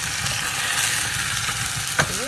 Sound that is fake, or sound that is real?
real